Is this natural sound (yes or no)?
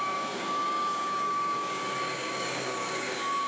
no